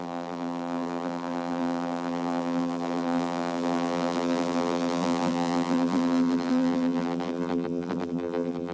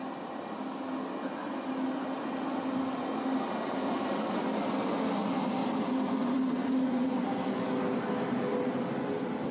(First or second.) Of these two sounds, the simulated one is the first